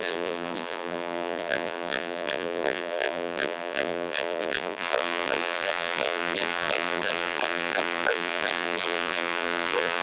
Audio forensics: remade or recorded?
remade